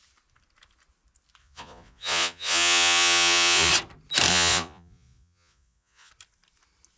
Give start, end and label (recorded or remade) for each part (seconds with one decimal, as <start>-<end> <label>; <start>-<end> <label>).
0.0-1.4 recorded; 1.4-3.7 remade; 3.7-4.3 recorded; 4.3-6.1 remade; 6.1-7.0 recorded